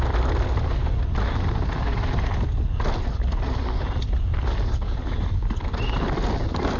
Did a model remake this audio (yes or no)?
no